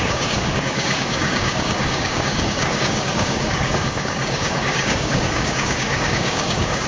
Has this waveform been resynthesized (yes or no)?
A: yes